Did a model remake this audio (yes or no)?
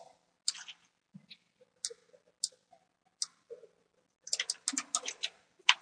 no